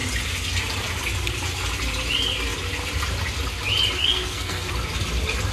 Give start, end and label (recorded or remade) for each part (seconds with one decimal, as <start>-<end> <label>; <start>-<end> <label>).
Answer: 0.0-4.0 recorded; 4.0-4.7 remade; 4.7-5.5 recorded